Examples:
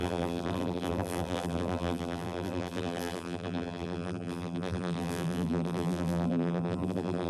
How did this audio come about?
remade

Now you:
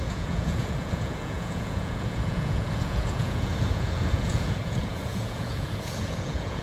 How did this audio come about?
remade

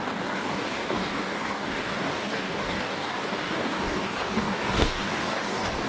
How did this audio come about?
remade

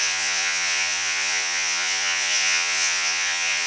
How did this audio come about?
remade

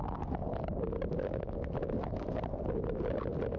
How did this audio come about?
recorded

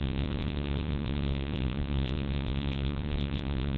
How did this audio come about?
remade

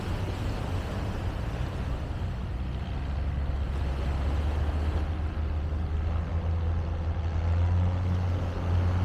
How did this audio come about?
recorded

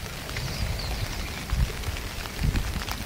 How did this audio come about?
recorded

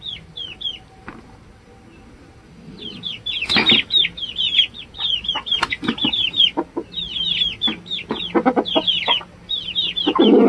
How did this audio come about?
recorded